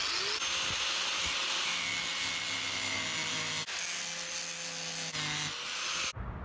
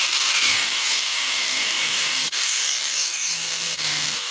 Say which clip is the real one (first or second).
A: first